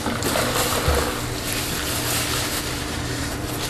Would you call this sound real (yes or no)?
yes